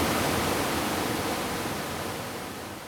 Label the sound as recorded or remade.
recorded